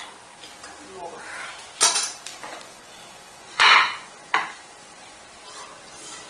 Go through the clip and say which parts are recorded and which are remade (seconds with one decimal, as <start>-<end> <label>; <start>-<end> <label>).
0.0-2.3 recorded; 2.3-5.2 remade; 5.2-6.3 recorded